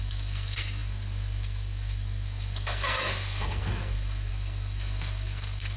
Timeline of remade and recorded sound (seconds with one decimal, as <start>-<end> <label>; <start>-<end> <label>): 0.0-5.8 remade